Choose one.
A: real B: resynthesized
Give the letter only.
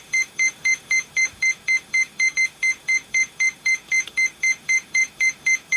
B